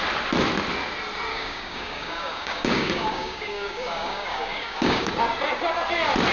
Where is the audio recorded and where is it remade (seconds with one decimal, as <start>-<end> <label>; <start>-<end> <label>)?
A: 0.0-1.3 recorded; 1.3-5.1 remade; 5.1-6.3 recorded